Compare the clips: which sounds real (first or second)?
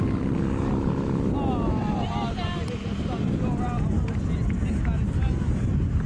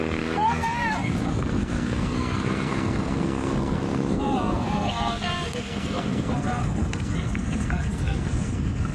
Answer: first